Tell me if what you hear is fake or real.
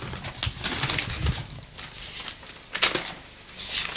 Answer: real